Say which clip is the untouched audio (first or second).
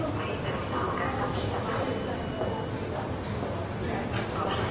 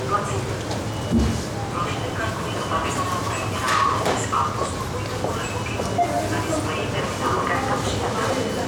second